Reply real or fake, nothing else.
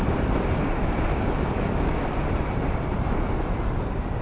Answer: real